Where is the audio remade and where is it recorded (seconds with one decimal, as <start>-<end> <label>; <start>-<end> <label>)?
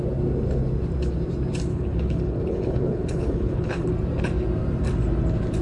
0.0-1.7 recorded; 1.7-3.9 remade; 3.9-5.6 recorded